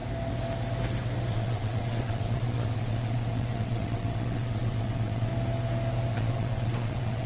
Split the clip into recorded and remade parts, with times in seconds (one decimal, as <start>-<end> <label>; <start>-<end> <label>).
0.0-1.3 recorded; 1.3-5.3 remade; 5.3-6.1 recorded; 6.1-7.3 remade